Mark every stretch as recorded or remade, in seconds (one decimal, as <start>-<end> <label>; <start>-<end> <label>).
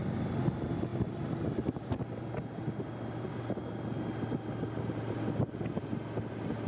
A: 0.0-6.7 recorded